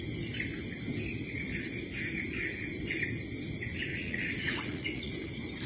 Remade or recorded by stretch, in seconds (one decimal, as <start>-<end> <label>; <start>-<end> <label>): 0.0-3.9 recorded; 3.9-5.1 remade; 5.1-5.7 recorded